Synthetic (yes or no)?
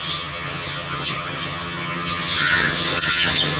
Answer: yes